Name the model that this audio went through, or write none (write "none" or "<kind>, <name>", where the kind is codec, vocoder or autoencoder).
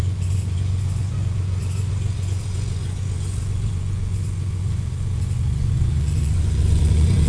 vocoder, Vocos